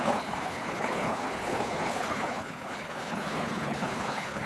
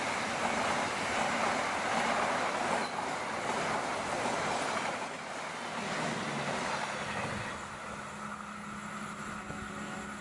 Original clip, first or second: second